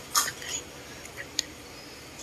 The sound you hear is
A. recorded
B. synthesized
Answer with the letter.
A